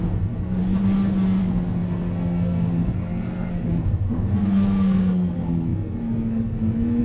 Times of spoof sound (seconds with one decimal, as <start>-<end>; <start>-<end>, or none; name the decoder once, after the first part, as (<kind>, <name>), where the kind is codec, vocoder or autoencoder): 0.0-0.6 (codec, SNAC); 1.4-7.0

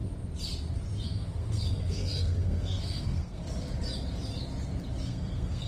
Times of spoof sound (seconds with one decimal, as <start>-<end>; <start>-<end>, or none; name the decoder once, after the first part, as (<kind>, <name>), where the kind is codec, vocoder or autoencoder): 1.0-3.4 (codec, SNAC); 5.0-5.7

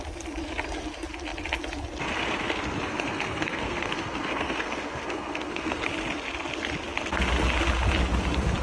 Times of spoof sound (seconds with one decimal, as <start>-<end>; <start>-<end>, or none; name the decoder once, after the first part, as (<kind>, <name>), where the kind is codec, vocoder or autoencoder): 2.9-5.8 (codec, SNAC)

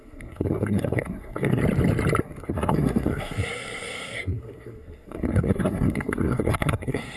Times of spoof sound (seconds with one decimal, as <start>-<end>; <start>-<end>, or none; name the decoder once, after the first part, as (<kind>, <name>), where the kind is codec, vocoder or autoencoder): 0.0-1.6 (codec, SNAC); 2.2-7.2